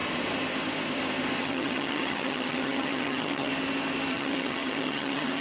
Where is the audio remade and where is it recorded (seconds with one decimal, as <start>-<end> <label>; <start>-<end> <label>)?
0.0-1.4 recorded; 1.4-3.5 remade; 3.5-4.1 recorded; 4.1-5.4 remade